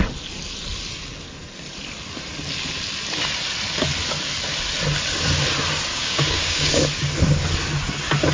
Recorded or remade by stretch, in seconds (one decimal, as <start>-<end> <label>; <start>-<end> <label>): 0.0-5.9 recorded; 5.9-6.7 remade; 6.7-8.3 recorded